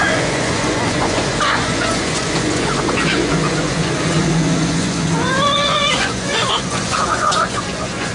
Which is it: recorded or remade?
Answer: remade